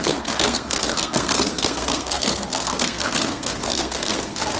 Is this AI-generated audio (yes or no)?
yes